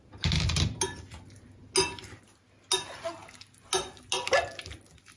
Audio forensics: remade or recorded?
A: recorded